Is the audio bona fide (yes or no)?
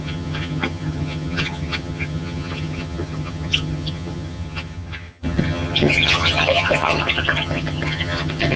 no